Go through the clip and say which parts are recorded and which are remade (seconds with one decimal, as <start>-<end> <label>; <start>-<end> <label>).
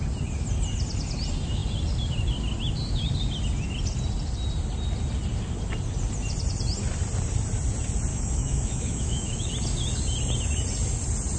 0.0-8.1 recorded; 8.1-9.5 remade; 9.5-11.4 recorded